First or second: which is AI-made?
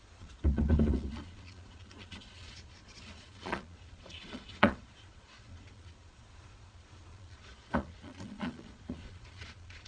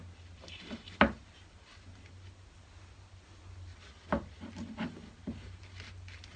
first